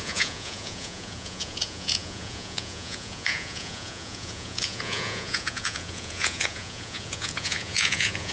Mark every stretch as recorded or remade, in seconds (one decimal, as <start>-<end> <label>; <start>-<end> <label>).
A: 0.0-8.3 remade